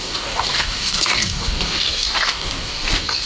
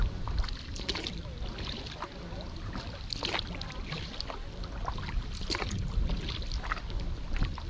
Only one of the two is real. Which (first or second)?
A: second